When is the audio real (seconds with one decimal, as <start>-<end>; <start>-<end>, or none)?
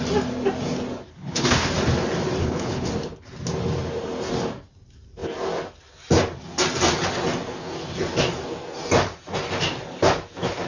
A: 0.0-1.1; 1.7-2.4; 2.9-10.7